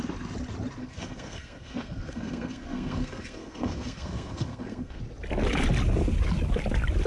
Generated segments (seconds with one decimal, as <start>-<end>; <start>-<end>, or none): 0.8-5.0